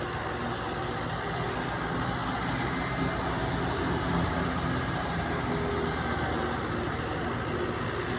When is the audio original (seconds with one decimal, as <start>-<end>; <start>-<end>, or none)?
0.0-8.2